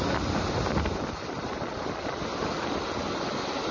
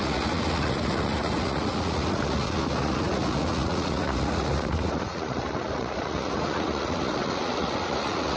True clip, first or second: first